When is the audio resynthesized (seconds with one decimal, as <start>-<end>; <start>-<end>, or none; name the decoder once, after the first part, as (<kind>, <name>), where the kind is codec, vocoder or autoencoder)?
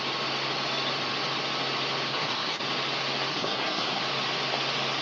2.1-2.6 (codec, SNAC); 3.3-4.0